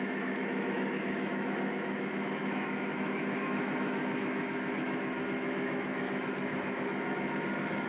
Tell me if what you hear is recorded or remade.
remade